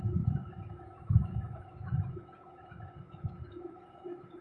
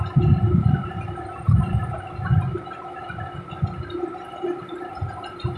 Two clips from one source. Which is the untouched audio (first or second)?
second